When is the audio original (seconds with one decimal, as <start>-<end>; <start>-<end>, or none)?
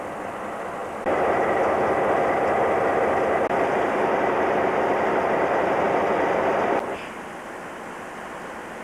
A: 0.0-8.8